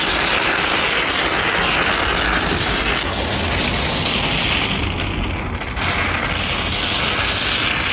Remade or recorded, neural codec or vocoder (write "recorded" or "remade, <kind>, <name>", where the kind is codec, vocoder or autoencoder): recorded